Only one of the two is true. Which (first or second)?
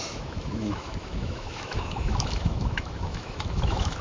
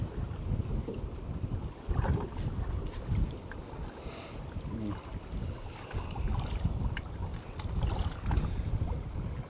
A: second